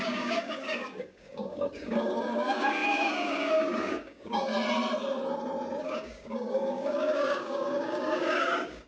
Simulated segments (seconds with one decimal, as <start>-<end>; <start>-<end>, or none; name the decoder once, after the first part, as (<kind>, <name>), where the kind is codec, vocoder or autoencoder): 0.0-4.5 (codec, DAC); 5.8-8.9